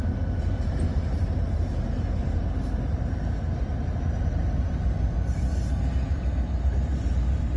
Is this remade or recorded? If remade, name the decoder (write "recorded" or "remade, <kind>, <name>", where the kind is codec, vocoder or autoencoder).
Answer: remade, vocoder, BigVGAN v2